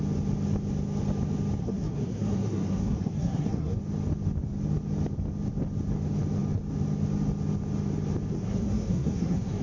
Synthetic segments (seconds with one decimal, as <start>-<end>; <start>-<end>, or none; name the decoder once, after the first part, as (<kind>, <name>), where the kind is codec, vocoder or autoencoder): 1.6-3.8 (codec, SNAC); 8.3-9.6

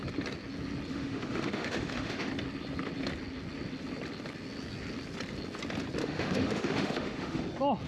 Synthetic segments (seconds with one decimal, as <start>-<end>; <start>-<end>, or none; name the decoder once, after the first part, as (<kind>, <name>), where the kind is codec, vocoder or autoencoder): 0.9-2.3 (autoencoder, DAC-VAE); 6.0-7.4

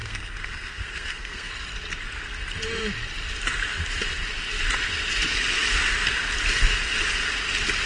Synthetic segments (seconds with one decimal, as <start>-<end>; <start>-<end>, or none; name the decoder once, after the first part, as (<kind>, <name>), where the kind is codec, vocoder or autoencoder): 0.0-1.5 (codec, SNAC)